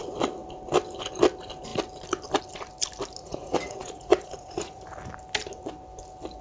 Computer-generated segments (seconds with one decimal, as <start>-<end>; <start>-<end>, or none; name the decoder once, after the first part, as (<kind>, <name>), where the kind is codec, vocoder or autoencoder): 3.2-4.8 (vocoder, Vocos)

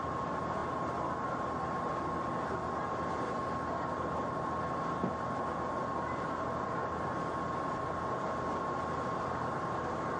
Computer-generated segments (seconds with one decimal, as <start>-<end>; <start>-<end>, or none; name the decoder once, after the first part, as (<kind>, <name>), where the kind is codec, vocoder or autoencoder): none

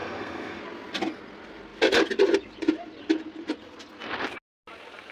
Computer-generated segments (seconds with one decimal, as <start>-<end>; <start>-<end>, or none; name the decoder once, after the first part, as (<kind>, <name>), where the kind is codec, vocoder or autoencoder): 0.0-0.6 (codec, SNAC)

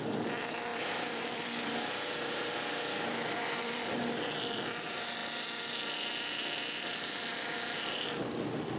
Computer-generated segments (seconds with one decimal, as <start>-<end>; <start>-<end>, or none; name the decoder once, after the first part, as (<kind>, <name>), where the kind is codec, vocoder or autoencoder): 0.7-3.8 (vocoder, BigVGAN v2); 5.2-5.7

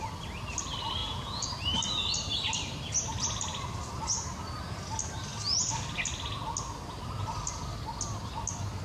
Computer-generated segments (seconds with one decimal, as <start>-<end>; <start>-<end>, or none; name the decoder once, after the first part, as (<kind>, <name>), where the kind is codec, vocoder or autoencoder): 1.0-1.5 (vocoder, Vocos)

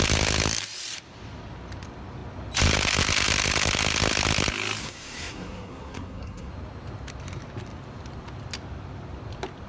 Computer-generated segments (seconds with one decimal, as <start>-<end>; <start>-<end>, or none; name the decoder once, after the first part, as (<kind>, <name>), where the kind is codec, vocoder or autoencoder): 4.8-6.5 (codec, SNAC)